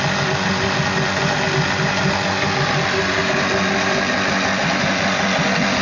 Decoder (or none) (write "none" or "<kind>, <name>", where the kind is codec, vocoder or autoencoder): none